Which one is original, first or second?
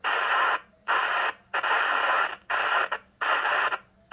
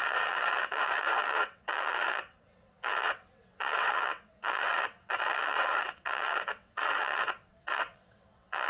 first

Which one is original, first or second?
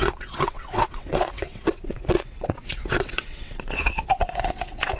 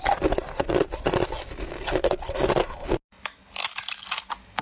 second